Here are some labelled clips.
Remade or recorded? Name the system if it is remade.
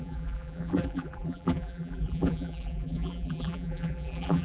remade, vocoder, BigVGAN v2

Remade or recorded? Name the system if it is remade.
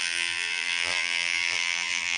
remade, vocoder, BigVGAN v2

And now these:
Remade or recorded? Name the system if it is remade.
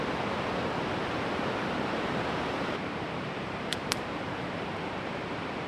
remade, vocoder, BigVGAN v2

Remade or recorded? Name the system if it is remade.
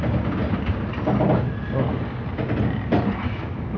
recorded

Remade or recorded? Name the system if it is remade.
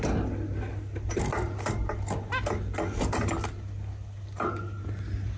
recorded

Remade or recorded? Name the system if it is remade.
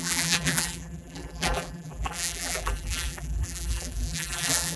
remade, vocoder, BigVGAN v2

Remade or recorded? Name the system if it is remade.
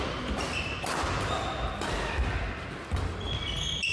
recorded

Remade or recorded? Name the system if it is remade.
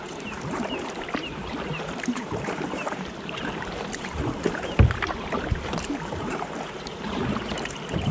remade, vocoder, BigVGAN v2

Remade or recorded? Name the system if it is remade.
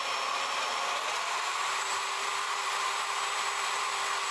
remade, vocoder, BigVGAN v2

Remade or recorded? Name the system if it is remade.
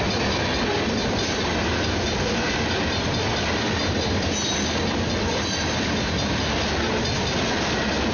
recorded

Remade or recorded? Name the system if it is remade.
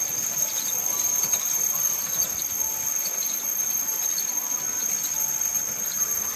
recorded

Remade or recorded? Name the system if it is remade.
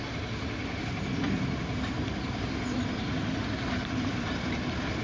recorded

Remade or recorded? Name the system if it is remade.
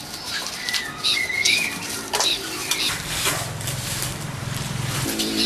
remade, vocoder, BigVGAN v2